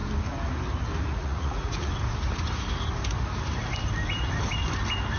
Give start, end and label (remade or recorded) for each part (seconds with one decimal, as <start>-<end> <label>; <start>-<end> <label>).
0.0-1.1 recorded; 1.1-1.9 remade; 1.9-5.2 recorded